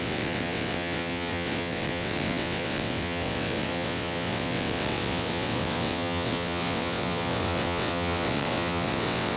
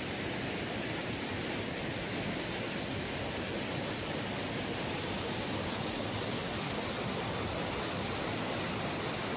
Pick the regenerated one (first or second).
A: first